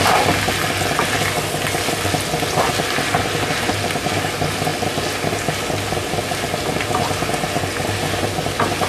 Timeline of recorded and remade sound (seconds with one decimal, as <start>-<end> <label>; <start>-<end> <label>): 0.0-8.9 recorded